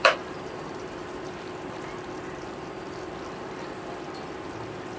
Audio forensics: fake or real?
fake